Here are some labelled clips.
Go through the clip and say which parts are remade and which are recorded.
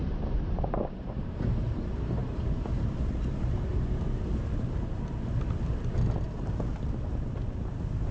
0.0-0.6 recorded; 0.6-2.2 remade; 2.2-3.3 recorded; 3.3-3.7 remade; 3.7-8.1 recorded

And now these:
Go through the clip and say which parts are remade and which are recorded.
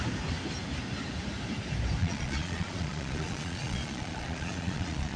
0.0-2.0 recorded; 2.0-5.2 remade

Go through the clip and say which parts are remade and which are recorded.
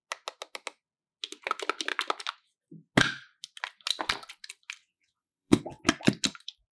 0.0-4.8 recorded; 4.8-5.8 remade; 5.8-6.8 recorded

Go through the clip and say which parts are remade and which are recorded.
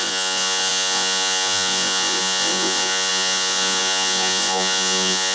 0.0-5.3 remade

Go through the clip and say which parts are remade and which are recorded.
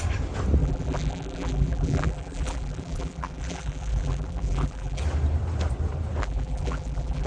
0.0-0.6 recorded; 0.6-5.0 remade; 5.0-6.2 recorded; 6.2-7.3 remade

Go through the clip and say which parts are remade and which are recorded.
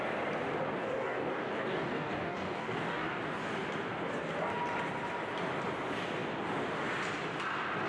0.0-0.8 recorded; 0.8-3.2 remade; 3.2-7.9 recorded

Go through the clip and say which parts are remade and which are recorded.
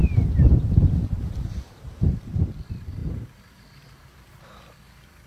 0.0-1.9 remade; 1.9-3.0 recorded; 3.0-4.4 remade; 4.4-5.3 recorded